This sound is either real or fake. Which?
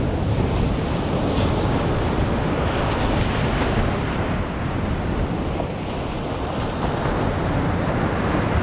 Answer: real